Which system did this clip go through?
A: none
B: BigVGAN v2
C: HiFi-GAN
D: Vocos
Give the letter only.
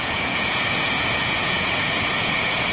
D